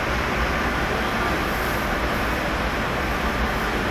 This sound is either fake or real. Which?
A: real